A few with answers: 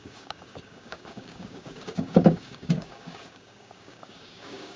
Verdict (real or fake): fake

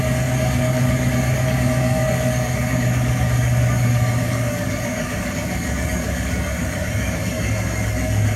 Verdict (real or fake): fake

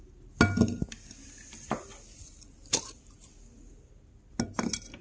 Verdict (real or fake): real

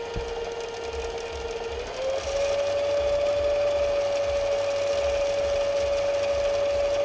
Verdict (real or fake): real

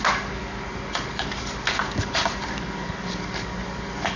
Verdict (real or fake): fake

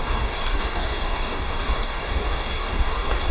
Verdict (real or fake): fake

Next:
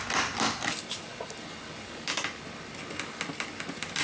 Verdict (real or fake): real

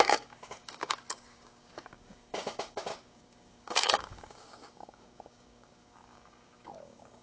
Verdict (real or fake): fake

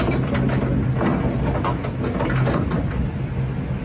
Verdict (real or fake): real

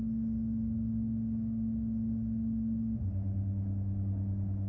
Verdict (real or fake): fake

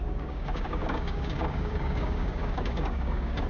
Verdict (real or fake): fake